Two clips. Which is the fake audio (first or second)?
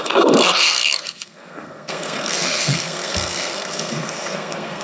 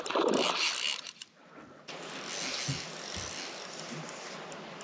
first